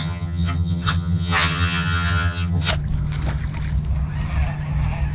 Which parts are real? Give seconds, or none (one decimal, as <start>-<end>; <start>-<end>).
2.7-5.1